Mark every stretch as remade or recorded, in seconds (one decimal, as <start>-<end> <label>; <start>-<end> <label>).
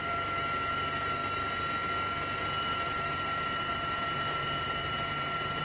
0.0-1.2 remade; 1.2-2.4 recorded; 2.4-5.6 remade